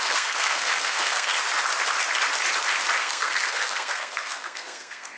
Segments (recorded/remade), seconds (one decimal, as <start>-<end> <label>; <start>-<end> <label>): 0.0-1.3 remade; 1.3-3.0 recorded; 3.0-5.2 remade